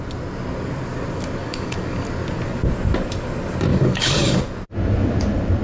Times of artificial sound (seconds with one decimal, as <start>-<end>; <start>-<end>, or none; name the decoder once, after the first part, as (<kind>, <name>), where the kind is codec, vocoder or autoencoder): 1.4-2.1 (codec, DAC); 3.7-4.4